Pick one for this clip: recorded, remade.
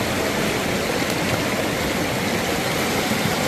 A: recorded